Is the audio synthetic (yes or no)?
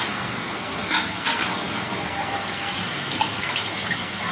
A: yes